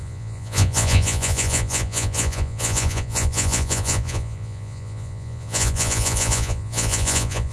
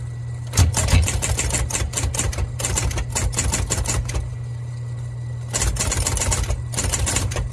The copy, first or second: first